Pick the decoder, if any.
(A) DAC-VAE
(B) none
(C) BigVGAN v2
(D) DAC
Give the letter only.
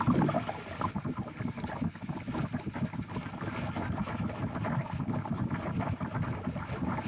B